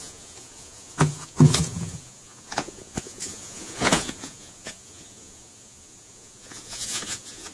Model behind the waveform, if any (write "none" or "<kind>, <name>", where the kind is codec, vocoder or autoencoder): vocoder, Vocos